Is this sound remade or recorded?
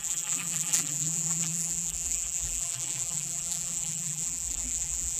remade